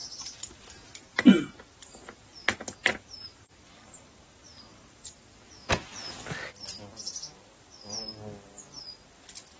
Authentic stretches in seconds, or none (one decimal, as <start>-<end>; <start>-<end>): 0.7-1.1; 4.9-9.6